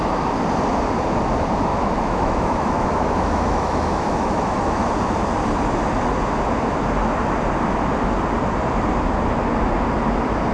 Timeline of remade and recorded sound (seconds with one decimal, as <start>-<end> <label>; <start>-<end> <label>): 0.0-1.7 recorded; 1.7-4.9 remade; 4.9-10.5 recorded